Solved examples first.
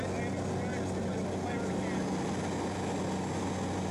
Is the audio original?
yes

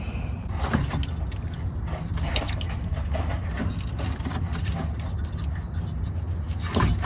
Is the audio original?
yes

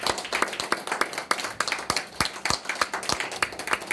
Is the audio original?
yes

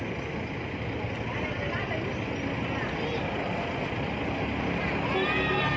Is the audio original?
yes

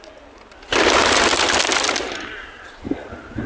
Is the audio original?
yes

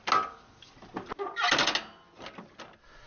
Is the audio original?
yes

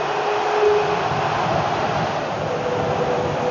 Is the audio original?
yes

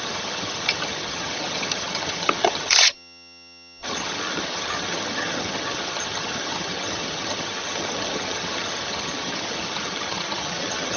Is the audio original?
no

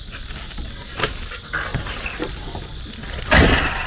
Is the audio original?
yes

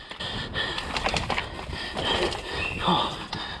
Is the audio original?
yes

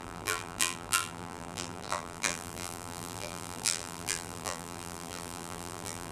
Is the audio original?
no